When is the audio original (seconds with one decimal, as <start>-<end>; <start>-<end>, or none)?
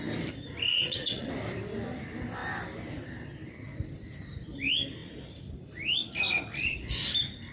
0.0-0.7; 1.3-7.5